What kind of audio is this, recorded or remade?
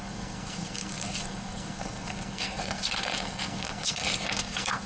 remade